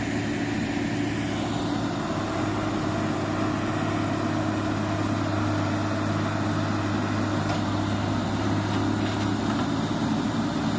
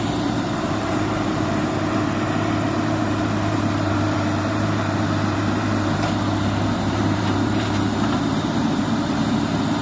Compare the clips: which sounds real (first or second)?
first